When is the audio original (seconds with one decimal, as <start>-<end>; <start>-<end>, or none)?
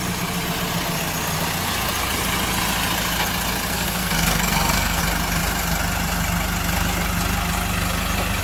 0.0-3.7; 5.0-8.4